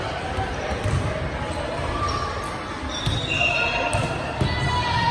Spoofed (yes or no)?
no